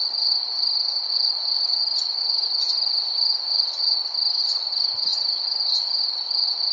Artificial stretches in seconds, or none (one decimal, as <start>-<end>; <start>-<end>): none